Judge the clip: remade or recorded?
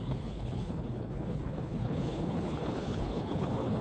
remade